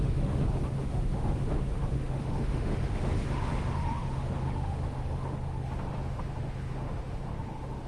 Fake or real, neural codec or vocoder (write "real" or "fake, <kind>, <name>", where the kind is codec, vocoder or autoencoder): fake, autoencoder, DAC-VAE